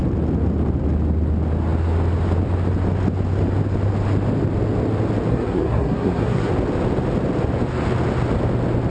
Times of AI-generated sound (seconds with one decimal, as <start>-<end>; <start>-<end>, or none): 5.3-6.5